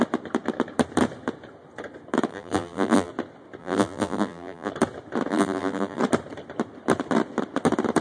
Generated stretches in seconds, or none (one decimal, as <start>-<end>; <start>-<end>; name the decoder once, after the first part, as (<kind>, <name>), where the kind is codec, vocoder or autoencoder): 2.3-3.1 (vocoder, BigVGAN v2); 3.6-4.7; 5.3-6.0